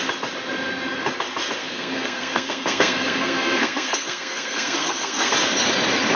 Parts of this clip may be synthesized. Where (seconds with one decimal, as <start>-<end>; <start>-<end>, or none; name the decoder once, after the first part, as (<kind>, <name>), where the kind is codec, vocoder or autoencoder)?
1.6-5.3 (codec, SNAC)